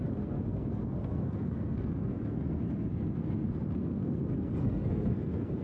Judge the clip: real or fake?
fake